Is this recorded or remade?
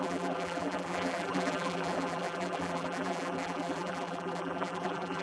remade